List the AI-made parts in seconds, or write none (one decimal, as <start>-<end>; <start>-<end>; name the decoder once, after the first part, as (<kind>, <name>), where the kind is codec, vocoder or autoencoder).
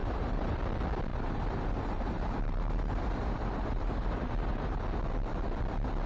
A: 0.0-0.6 (vocoder, BigVGAN v2); 1.1-4.8